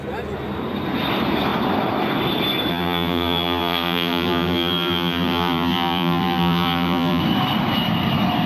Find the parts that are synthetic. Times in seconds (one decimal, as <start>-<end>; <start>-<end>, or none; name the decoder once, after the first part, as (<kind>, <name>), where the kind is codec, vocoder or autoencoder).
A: 2.7-7.2 (vocoder, BigVGAN v2)